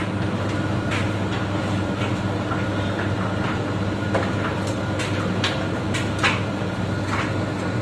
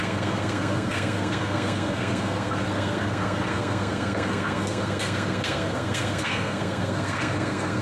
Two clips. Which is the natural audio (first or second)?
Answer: first